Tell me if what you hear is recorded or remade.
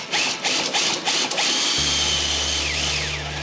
recorded